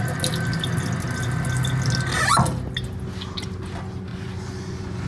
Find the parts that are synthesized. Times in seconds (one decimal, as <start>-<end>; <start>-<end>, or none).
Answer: 4.1-5.1